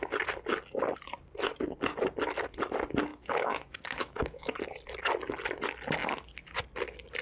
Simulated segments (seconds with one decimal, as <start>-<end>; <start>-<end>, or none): 3.1-4.6